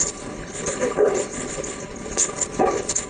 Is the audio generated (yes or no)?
yes